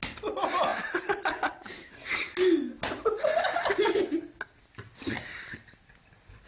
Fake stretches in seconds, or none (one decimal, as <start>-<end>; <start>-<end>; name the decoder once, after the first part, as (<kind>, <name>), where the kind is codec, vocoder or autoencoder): none